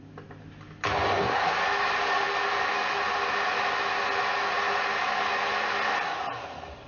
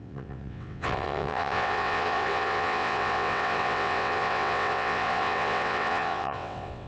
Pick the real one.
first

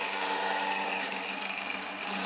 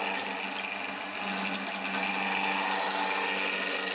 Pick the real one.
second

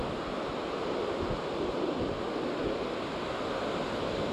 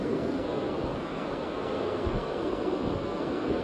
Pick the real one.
first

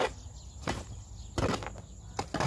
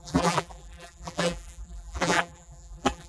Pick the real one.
first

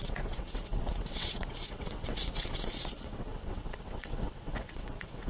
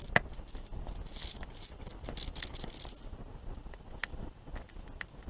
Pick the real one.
second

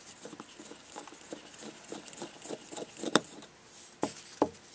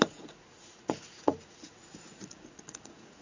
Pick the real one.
first